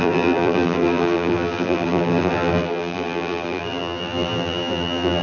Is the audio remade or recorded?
remade